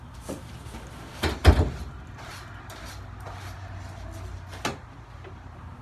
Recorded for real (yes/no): yes